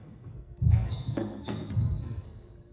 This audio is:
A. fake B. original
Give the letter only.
A